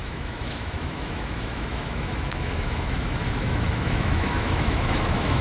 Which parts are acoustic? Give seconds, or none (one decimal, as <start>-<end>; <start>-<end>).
none